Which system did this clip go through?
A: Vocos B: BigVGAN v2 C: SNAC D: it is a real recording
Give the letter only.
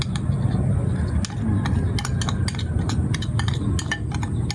D